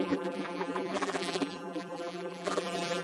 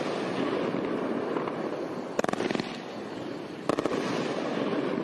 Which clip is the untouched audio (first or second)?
second